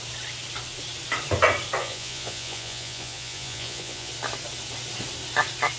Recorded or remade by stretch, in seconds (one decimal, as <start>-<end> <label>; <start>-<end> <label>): 0.0-1.8 recorded; 1.8-4.1 remade; 4.1-5.8 recorded